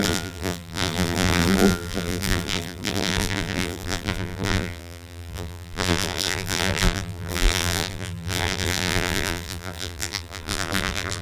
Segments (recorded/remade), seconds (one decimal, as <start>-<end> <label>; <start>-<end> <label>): 0.0-11.2 remade